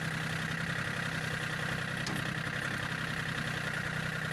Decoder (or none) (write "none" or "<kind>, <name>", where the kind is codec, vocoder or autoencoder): none